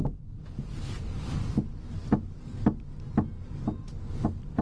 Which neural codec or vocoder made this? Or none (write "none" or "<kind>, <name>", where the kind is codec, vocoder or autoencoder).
none